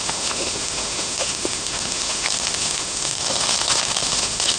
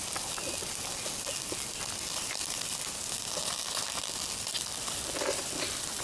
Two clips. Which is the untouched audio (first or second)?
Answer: second